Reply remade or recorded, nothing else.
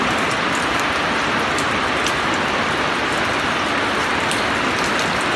recorded